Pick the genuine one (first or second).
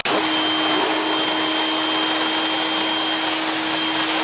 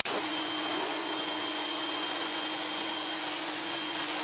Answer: first